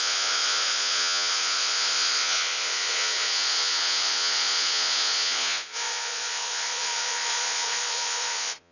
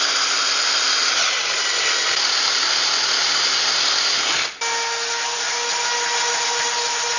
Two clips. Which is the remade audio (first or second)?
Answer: first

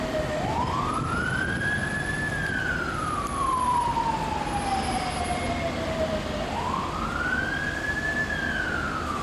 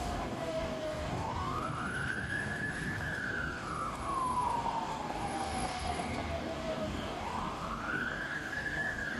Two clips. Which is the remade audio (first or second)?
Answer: second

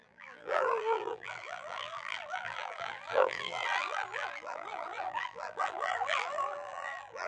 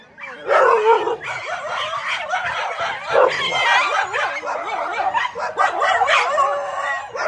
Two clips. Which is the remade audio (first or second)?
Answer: first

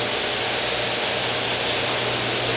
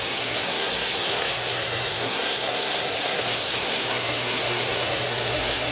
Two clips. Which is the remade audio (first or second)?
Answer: second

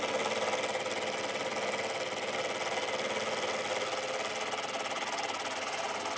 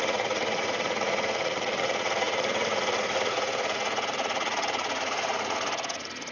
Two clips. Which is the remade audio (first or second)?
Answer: second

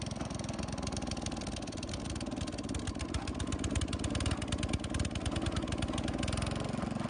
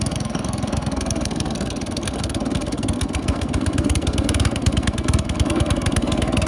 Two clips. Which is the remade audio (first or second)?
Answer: second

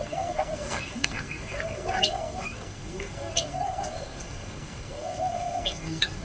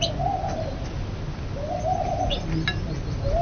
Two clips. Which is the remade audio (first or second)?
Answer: first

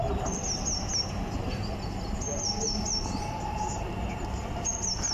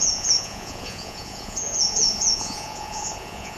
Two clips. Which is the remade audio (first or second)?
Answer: second